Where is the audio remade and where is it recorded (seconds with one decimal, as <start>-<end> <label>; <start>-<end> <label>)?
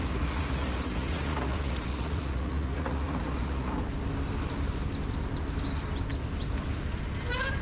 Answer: 0.0-3.8 remade; 3.8-7.6 recorded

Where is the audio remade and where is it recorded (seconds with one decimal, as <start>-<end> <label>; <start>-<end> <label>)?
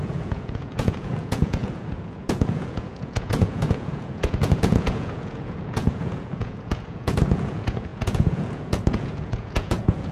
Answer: 0.0-10.1 remade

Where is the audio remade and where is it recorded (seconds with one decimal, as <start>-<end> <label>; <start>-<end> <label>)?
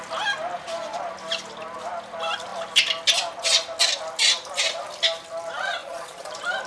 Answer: 0.0-5.8 recorded; 5.8-6.3 remade; 6.3-6.7 recorded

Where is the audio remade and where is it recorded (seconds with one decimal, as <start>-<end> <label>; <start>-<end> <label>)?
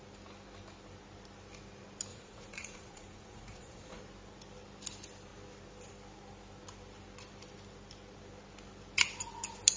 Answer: 0.0-2.1 recorded; 2.1-4.0 remade; 4.0-9.8 recorded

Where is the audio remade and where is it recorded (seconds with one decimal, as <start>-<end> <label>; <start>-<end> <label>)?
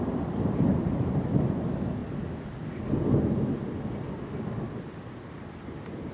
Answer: 0.0-6.1 recorded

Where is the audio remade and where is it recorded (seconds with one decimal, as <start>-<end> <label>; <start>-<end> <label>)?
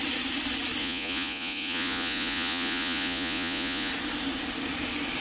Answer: 0.0-0.8 recorded; 0.8-3.9 remade; 3.9-5.2 recorded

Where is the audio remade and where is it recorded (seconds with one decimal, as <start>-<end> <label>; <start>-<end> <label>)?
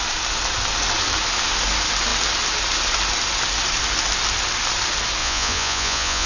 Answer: 0.0-5.2 recorded; 5.2-6.3 remade